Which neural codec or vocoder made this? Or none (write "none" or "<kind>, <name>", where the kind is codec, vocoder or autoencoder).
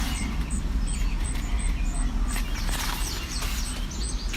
none